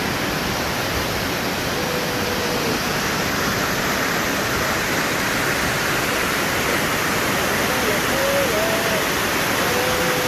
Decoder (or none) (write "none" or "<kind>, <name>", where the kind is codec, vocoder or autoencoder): none